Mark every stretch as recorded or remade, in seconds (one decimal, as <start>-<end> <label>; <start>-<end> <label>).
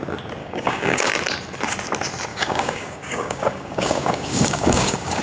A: 0.0-0.4 recorded; 0.4-1.1 remade; 1.1-2.3 recorded; 2.3-5.2 remade